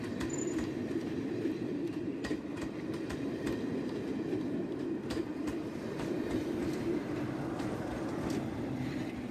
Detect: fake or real fake